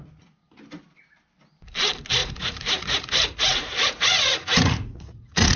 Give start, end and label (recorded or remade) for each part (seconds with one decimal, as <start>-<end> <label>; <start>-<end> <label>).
0.0-2.2 recorded; 2.2-5.6 remade